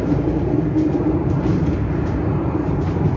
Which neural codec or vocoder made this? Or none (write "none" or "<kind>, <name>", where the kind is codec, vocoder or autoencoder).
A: vocoder, BigVGAN v2